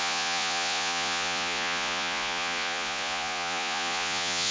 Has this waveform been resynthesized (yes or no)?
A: yes